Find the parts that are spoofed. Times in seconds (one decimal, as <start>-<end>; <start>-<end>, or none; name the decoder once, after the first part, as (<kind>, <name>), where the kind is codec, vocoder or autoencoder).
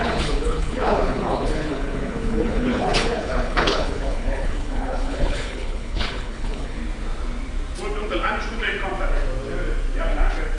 0.0-6.8 (codec, HILCodec)